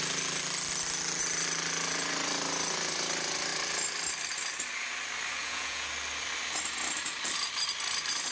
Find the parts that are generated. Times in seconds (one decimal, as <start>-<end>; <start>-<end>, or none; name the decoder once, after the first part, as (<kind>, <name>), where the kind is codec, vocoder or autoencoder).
5.4-5.9 (vocoder, Vocos)